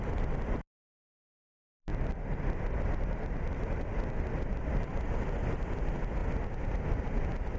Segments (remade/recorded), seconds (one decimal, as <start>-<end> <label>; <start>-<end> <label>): 0.0-7.6 recorded